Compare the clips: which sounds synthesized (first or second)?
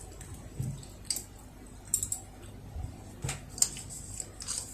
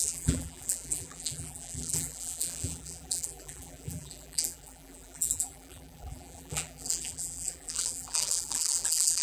second